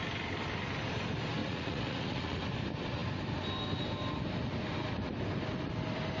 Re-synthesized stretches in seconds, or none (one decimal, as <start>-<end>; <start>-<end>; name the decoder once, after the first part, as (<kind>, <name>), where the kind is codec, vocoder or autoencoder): 1.4-2.4 (vocoder, Vocos)

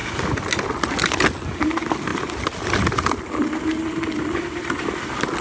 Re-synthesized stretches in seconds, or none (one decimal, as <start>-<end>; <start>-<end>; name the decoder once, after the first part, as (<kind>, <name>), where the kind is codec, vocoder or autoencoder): none